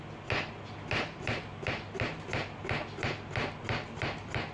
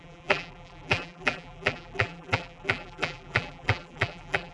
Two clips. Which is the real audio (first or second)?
first